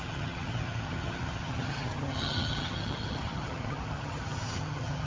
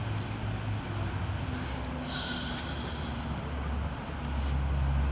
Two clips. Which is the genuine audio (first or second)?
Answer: second